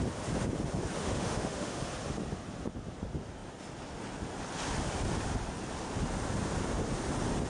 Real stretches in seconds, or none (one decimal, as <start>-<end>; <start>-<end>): 0.0-1.0; 1.8-7.5